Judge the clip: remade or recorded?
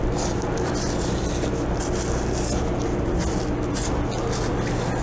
recorded